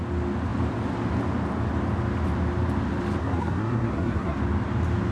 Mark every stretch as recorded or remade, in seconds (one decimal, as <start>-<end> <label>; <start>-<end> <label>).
0.0-3.2 recorded; 3.2-4.4 remade; 4.4-5.1 recorded